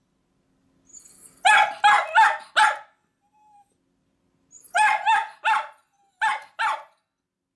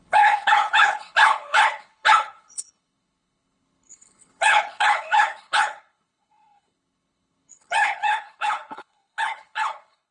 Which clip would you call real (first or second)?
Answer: first